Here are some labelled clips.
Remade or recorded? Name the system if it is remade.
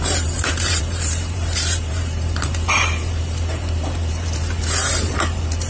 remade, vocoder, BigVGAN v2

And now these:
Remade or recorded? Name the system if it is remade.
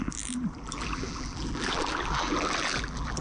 remade, vocoder, BigVGAN v2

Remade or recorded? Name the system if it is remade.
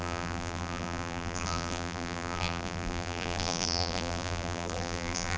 remade, vocoder, BigVGAN v2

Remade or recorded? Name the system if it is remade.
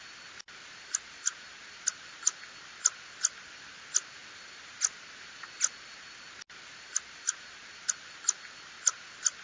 recorded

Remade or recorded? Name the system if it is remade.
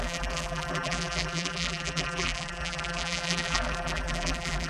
remade, vocoder, BigVGAN v2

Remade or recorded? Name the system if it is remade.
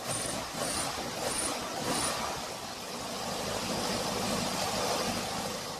recorded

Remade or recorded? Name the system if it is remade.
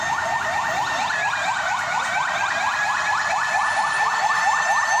recorded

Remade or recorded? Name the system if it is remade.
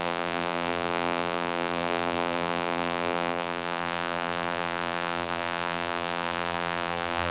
remade, vocoder, BigVGAN v2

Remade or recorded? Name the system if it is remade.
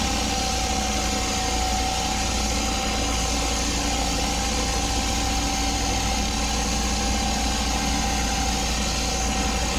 recorded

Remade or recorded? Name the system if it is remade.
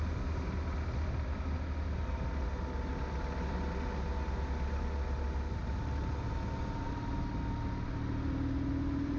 recorded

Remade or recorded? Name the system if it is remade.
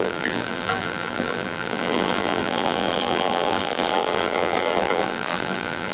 remade, vocoder, BigVGAN v2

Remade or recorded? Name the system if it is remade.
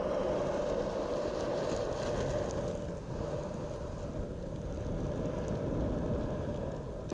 recorded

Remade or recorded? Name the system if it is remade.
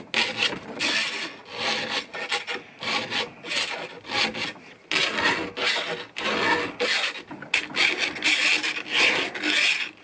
recorded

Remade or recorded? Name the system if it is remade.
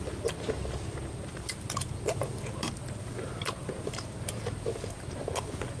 recorded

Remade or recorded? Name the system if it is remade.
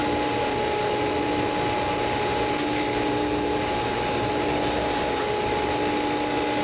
recorded